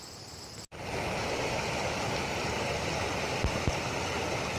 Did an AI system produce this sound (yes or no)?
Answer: no